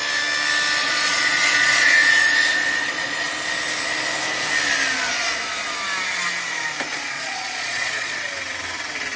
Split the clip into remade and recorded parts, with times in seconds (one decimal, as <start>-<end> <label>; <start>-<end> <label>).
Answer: 0.0-0.8 recorded; 0.8-3.3 remade; 3.3-6.9 recorded; 6.9-8.3 remade; 8.3-9.2 recorded